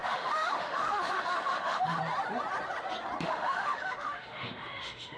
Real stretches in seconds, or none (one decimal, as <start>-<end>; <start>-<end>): 2.0-3.2